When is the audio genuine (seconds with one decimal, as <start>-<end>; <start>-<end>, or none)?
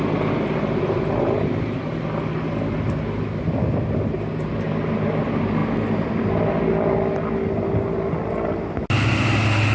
0.0-9.7